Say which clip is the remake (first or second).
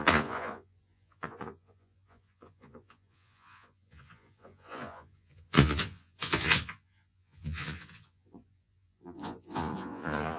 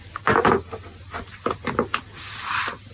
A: first